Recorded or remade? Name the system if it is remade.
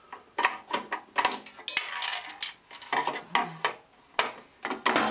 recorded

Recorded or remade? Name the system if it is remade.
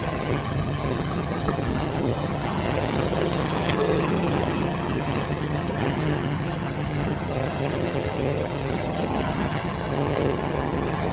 remade, vocoder, HiFi-GAN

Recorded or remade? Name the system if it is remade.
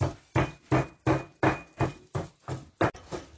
recorded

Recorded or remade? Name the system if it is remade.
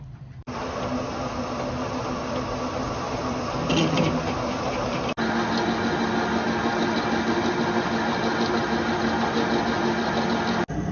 recorded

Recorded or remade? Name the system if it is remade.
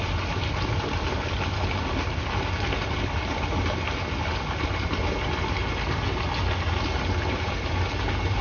recorded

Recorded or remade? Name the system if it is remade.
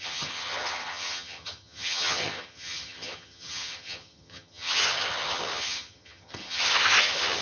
remade, vocoder, HiFi-GAN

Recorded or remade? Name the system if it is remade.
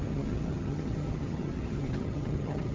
remade, vocoder, HiFi-GAN